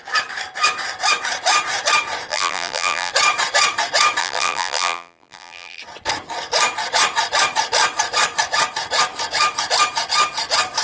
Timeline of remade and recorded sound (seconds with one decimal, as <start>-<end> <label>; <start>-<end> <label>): 0.0-2.3 recorded; 2.3-3.1 remade; 3.1-4.2 recorded; 4.2-5.8 remade; 5.8-10.8 recorded